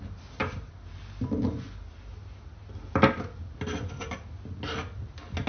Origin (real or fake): real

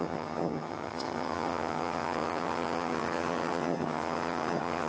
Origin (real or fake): fake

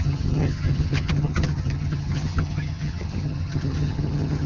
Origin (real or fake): fake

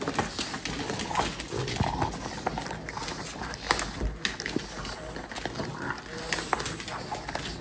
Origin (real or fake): real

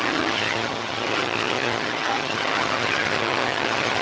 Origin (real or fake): fake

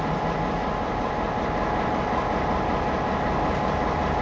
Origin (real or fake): real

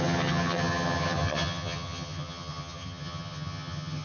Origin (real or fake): fake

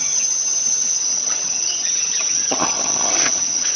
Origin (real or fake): fake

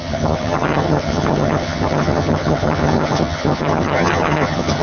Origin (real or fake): fake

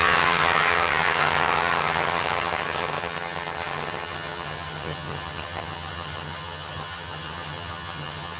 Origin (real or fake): fake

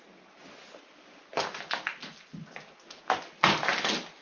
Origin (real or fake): real